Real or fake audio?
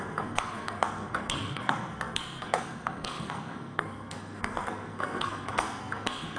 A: fake